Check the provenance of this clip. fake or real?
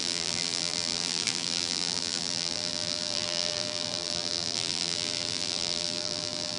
fake